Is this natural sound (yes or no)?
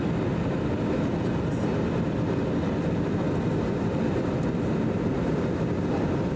yes